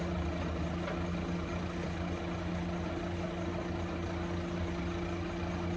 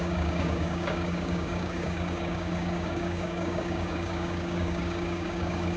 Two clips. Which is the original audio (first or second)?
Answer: first